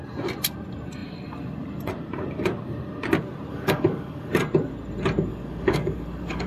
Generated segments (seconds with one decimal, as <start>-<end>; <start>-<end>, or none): 3.5-4.3; 5.3-6.5